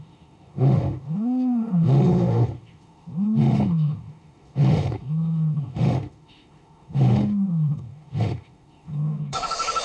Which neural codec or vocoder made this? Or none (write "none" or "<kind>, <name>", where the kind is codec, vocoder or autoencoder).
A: autoencoder, DAC-VAE